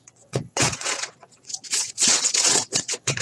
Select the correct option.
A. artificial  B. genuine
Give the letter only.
A